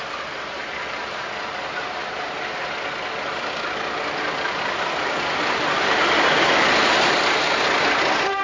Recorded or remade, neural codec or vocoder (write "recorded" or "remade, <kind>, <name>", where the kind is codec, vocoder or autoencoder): recorded